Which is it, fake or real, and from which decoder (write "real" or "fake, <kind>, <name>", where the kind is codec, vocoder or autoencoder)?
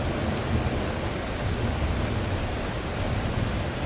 real